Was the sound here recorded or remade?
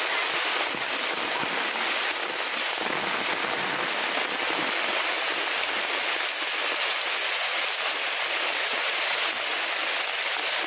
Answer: recorded